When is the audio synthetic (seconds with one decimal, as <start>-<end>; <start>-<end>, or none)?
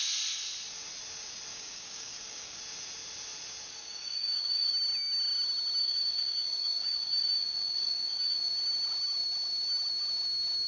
1.5-2.6; 3.8-4.7; 5.8-8.5